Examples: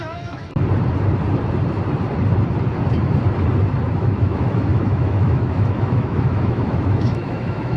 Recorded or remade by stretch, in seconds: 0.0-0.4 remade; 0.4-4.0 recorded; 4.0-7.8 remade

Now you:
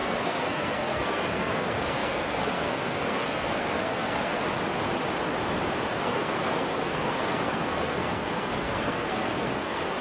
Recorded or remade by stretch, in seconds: 0.0-4.4 remade; 4.4-6.0 recorded; 6.0-10.0 remade

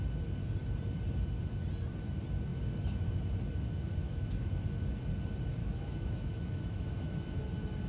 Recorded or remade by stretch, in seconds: 0.0-4.0 recorded; 4.0-4.5 remade; 4.5-5.6 recorded; 5.6-7.4 remade; 7.4-7.9 recorded

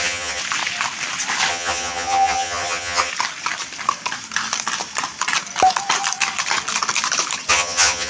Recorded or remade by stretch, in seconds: 0.0-0.4 remade; 0.4-1.5 recorded; 1.5-3.1 remade; 3.1-7.5 recorded; 7.5-8.1 remade